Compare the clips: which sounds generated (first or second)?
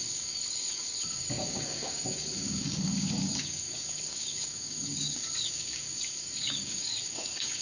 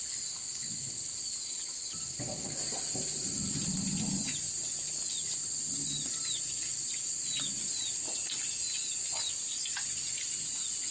first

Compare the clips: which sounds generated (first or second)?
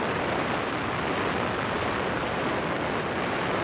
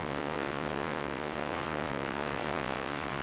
second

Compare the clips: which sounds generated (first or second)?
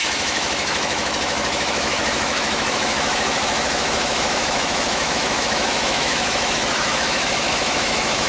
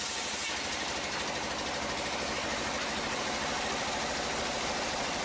first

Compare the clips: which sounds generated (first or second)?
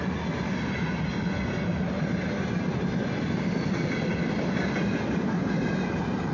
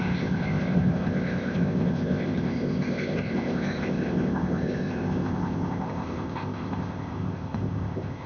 second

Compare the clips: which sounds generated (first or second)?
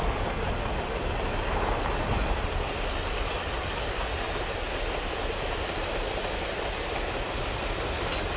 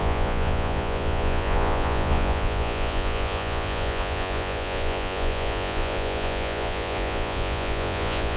second